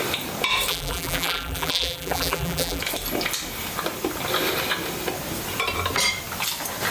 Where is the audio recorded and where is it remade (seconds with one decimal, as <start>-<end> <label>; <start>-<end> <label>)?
0.0-0.7 recorded; 0.7-2.8 remade; 2.8-6.9 recorded